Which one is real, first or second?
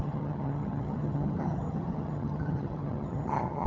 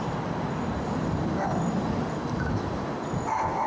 second